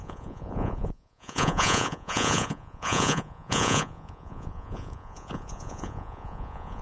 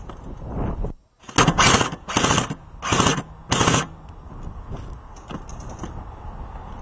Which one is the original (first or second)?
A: second